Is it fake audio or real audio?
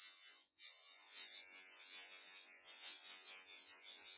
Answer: fake